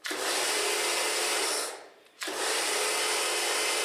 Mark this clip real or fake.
real